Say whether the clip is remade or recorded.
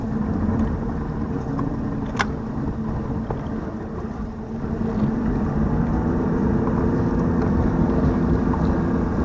recorded